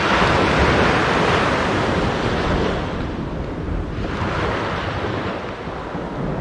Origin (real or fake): real